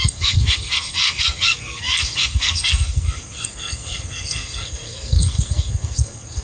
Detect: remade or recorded remade